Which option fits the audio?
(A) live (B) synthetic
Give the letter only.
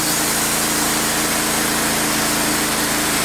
A